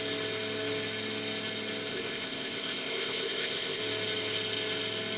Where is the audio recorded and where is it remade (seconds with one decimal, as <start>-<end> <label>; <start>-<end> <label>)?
0.0-1.9 recorded; 1.9-3.8 remade; 3.8-5.2 recorded